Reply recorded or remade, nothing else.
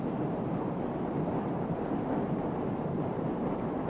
recorded